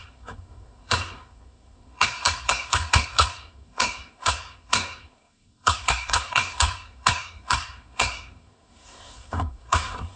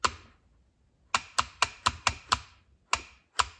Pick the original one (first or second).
second